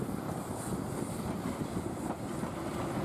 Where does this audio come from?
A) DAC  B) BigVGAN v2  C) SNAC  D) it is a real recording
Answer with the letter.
D